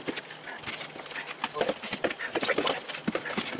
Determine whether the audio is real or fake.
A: real